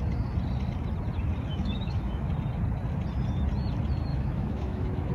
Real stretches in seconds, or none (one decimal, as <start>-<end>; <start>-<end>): 0.0-1.5; 2.3-4.1

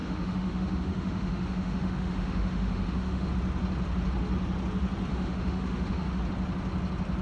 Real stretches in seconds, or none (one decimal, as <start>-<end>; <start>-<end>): 3.3-5.1; 6.2-7.2

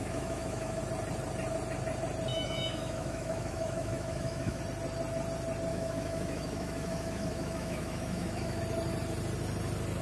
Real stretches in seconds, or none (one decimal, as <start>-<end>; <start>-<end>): 0.8-2.3; 4.6-5.7; 8.6-10.0

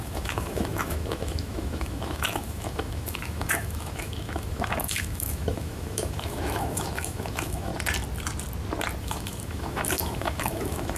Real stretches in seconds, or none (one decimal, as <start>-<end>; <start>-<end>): 7.7-9.0

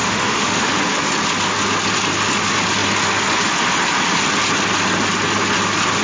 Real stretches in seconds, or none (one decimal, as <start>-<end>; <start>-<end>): 0.8-6.0

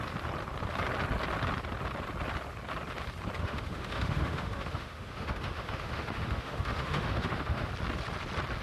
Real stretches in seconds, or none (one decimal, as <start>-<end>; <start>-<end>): 0.0-3.4; 7.7-8.6

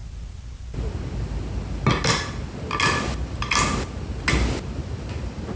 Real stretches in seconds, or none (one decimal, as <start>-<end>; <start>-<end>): 0.0-5.6

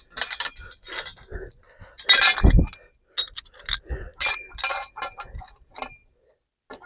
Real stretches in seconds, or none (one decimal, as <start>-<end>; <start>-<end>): 0.0-6.9